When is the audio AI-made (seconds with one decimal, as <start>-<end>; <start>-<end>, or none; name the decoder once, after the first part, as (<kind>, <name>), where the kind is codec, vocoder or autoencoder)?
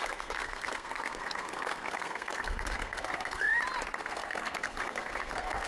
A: 0.0-3.5 (codec, SNAC); 4.0-5.7